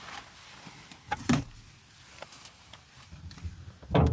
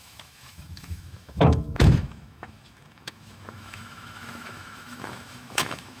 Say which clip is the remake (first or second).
second